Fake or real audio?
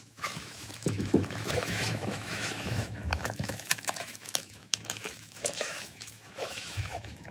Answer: fake